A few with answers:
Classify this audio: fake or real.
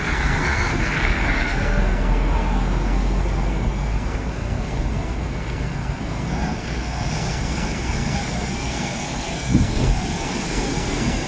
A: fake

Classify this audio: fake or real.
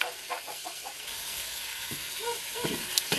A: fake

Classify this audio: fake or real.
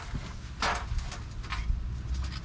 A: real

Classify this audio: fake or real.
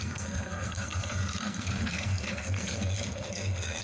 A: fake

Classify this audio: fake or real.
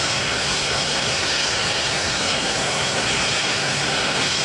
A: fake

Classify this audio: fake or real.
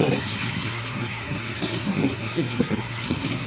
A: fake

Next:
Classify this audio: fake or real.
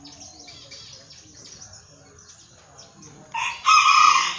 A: real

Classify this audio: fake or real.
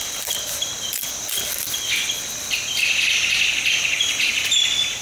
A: real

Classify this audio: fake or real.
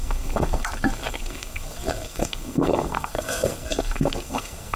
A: fake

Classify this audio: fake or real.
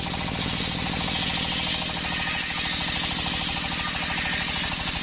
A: real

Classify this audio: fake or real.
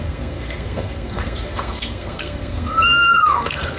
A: fake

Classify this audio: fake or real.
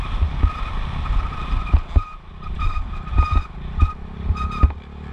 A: real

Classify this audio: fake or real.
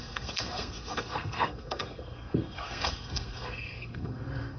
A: fake